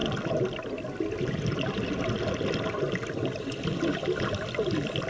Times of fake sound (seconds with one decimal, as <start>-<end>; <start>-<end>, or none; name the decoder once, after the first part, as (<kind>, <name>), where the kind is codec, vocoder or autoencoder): none